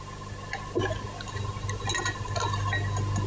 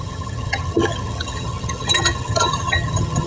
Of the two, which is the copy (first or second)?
second